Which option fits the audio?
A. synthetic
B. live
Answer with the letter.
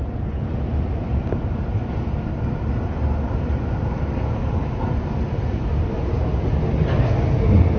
B